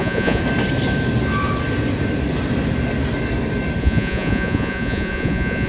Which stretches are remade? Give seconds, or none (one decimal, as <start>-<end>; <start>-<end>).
0.0-0.4; 3.8-5.7